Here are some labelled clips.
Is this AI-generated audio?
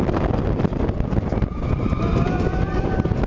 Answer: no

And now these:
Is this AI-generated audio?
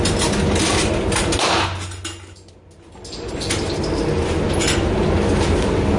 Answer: no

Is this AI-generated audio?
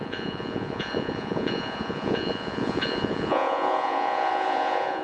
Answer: yes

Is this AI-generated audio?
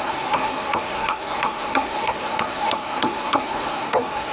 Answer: yes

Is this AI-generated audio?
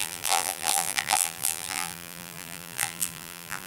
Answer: yes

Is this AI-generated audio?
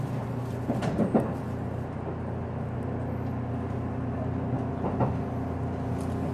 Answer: no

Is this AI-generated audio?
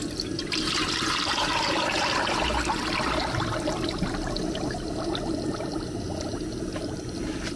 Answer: no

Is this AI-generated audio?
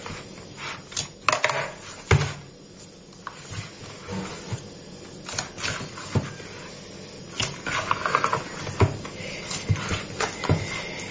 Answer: no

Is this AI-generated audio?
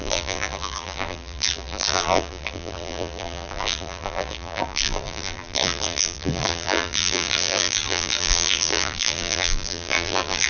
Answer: yes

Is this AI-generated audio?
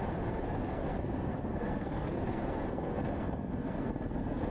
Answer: yes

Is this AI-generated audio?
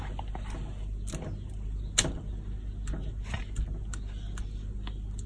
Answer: no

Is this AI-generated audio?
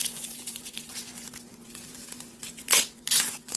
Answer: yes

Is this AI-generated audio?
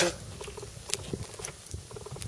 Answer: no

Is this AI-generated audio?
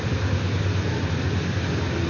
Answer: no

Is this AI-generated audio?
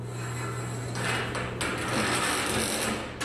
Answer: no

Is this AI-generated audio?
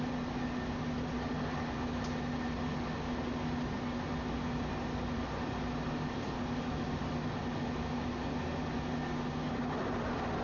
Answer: no